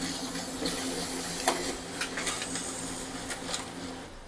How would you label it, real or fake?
real